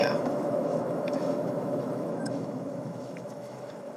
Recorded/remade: remade